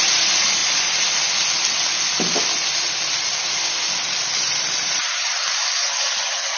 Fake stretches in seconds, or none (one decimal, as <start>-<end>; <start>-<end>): 5.8-6.6